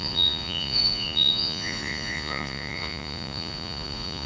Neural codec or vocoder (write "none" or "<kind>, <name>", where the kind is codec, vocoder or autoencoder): vocoder, Vocos